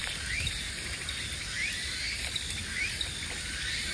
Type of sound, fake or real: real